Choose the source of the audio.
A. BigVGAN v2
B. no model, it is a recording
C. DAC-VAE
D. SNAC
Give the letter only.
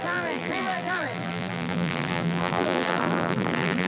A